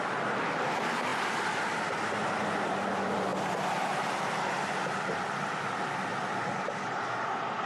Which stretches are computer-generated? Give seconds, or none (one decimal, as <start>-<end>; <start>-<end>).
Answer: none